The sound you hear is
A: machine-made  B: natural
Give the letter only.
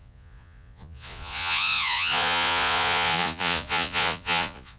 A